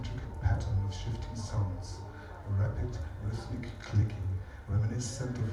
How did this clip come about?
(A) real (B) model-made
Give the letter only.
B